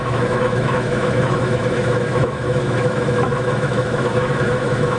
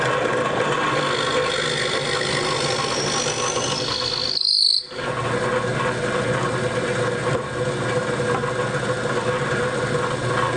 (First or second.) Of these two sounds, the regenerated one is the first